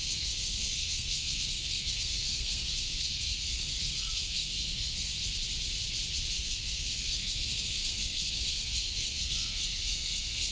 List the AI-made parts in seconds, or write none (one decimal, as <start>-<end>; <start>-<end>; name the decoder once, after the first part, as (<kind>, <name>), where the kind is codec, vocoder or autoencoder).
0.0-5.1 (codec, SNAC); 6.4-10.5